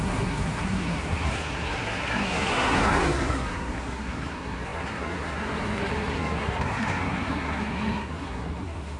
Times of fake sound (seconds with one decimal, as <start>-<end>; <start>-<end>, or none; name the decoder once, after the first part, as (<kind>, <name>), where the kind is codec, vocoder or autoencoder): 0.0-9.0 (codec, SNAC)